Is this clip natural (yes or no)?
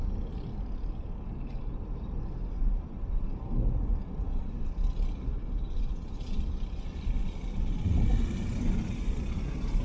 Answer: yes